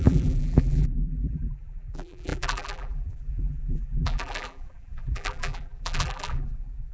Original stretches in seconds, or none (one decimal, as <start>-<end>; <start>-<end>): none